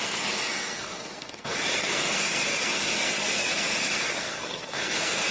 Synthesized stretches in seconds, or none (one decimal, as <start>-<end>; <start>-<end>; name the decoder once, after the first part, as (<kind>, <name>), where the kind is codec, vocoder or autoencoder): 0.0-5.3 (codec, SNAC)